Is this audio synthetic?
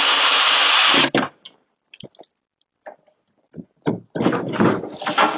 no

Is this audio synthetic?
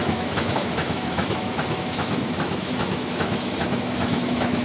yes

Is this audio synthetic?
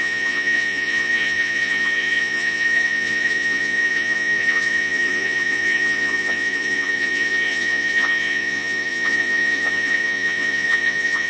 yes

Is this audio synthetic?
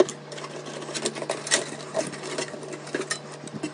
no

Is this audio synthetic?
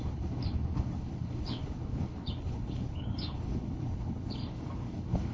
yes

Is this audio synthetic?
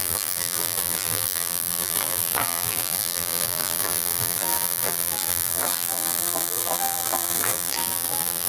yes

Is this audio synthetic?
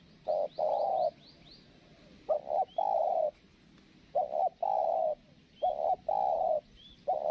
no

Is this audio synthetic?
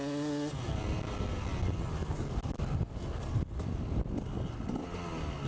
no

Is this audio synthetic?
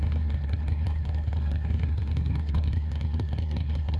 yes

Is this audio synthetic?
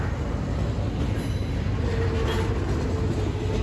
no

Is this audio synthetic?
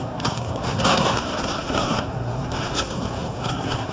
yes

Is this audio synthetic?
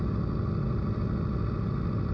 no